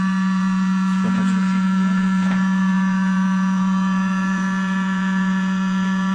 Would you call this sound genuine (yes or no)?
no